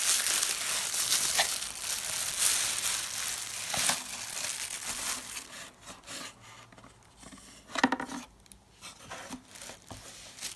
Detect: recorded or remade recorded